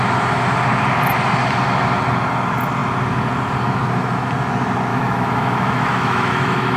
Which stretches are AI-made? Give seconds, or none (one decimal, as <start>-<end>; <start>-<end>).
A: 4.9-6.8